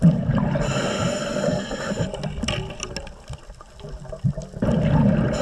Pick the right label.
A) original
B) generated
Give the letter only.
A